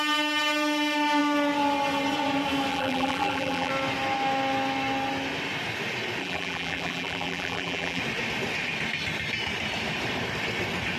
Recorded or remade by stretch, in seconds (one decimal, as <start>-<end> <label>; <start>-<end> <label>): 0.0-2.7 recorded; 2.7-3.7 remade; 3.7-6.2 recorded; 6.2-8.0 remade; 8.0-11.0 recorded